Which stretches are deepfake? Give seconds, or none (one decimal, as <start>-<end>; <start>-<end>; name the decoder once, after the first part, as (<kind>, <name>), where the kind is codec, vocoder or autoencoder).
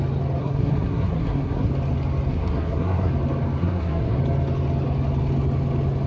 0.4-1.7 (codec, SNAC); 2.3-3.1; 3.6-4.2